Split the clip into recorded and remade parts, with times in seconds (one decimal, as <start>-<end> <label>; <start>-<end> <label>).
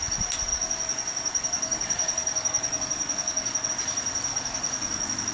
0.0-0.5 recorded; 0.5-3.7 remade; 3.7-4.3 recorded; 4.3-5.3 remade